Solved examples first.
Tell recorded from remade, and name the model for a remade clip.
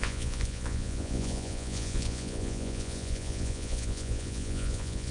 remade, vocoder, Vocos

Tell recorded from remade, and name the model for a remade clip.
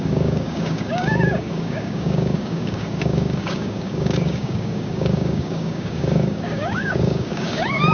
remade, codec, DAC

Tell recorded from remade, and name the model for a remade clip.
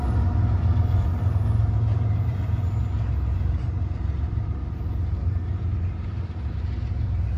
remade, vocoder, BigVGAN v2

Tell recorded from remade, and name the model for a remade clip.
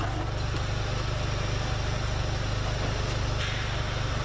recorded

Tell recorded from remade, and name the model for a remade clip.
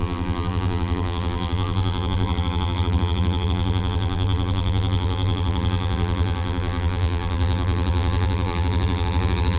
remade, vocoder, BigVGAN v2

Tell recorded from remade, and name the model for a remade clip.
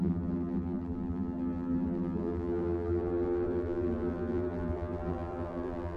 remade, vocoder, BigVGAN v2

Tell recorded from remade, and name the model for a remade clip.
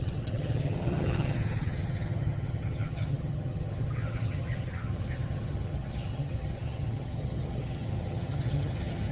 remade, vocoder, HiFi-GAN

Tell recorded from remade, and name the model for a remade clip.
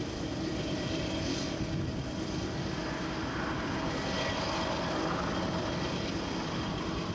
recorded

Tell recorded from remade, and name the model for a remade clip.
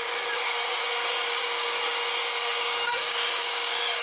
remade, codec, DAC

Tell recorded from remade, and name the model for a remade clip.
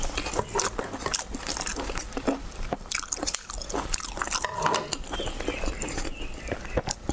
recorded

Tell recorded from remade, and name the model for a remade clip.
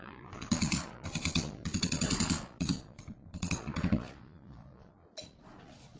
remade, vocoder, Vocos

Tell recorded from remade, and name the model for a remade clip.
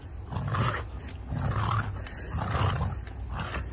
recorded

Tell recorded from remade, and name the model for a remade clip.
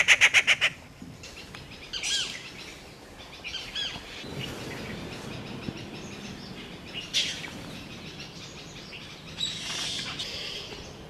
recorded